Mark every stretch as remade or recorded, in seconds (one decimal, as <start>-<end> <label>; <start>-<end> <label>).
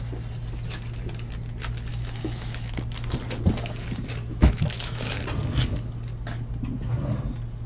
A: 0.0-1.9 recorded; 1.9-2.7 remade; 2.7-4.3 recorded; 4.3-5.1 remade; 5.1-7.7 recorded